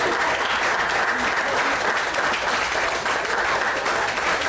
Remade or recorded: recorded